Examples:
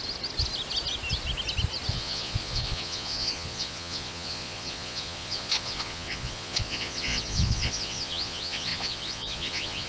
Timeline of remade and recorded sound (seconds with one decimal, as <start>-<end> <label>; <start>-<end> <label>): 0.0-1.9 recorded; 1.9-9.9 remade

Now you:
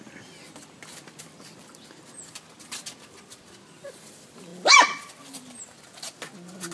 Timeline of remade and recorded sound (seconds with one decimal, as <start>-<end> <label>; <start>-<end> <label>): 0.0-6.7 recorded

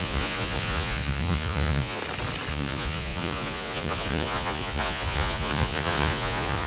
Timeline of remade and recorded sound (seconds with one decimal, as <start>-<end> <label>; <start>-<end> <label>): 0.0-2.0 remade; 2.0-2.5 recorded; 2.5-6.7 remade

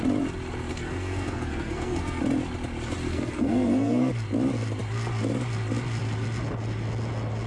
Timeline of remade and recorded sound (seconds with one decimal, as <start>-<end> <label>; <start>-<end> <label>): 0.0-0.7 recorded; 0.7-2.2 remade; 2.2-3.1 recorded; 3.1-4.1 remade; 4.1-7.5 recorded